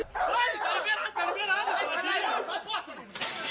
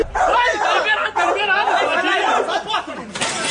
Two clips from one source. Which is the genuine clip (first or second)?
first